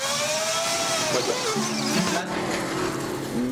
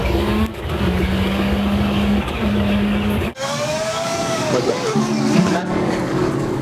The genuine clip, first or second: first